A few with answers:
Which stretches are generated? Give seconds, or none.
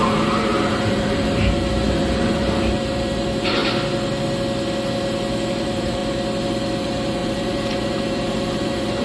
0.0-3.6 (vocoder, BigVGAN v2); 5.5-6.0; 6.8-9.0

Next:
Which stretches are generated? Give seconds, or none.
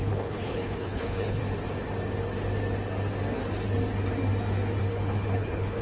0.0-1.4 (codec, HILCodec); 4.8-5.8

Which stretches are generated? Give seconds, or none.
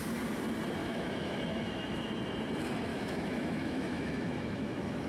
0.8-2.1 (autoencoder, DAC-VAE); 2.9-5.1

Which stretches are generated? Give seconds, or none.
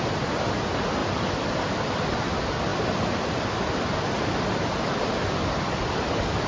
none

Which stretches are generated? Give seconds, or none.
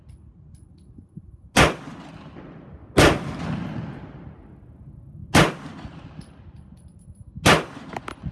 none